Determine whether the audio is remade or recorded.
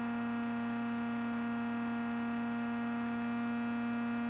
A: recorded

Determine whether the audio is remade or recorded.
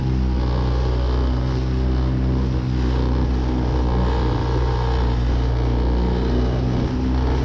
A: recorded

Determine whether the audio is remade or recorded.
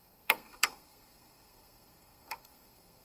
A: remade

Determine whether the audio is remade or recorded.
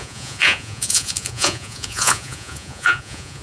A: remade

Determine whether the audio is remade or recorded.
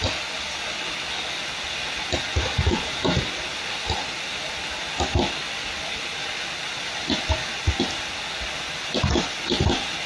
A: recorded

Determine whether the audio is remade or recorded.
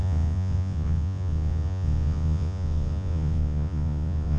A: remade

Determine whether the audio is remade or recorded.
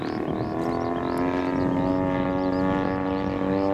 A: recorded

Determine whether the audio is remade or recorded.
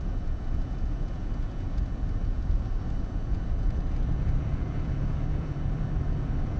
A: remade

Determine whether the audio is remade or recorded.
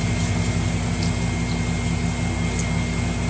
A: recorded